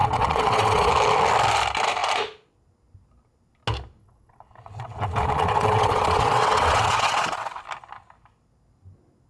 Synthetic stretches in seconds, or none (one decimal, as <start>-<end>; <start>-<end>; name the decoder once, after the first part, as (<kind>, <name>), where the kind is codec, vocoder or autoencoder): 0.0-0.9 (vocoder, WaveNeXt); 4.0-7.6